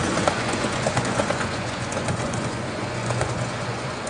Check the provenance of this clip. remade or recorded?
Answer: remade